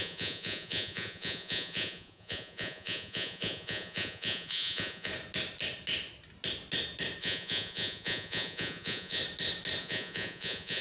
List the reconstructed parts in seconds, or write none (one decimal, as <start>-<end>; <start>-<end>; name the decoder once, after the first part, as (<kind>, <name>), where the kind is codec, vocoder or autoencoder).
0.0-5.1 (vocoder, Vocos); 7.2-9.2; 9.8-10.8